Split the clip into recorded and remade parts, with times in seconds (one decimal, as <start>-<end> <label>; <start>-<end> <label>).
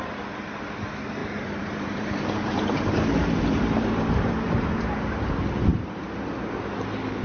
0.0-1.2 recorded; 1.2-5.3 remade; 5.3-5.7 recorded; 5.7-6.5 remade; 6.5-7.2 recorded